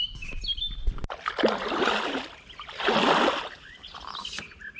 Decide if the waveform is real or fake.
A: real